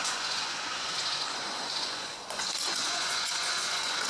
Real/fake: fake